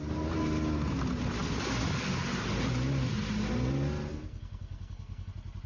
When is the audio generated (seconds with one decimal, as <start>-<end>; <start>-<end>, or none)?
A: 4.1-5.3